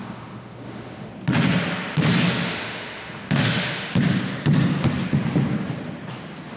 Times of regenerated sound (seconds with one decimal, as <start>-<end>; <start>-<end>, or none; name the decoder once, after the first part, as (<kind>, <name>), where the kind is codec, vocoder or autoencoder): 0.0-1.1 (autoencoder, DAC-VAE); 2.5-3.9